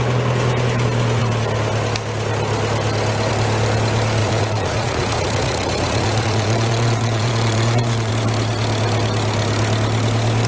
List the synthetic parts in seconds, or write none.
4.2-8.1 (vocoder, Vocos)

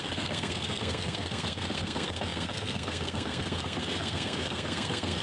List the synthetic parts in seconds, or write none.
0.0-5.2 (codec, SNAC)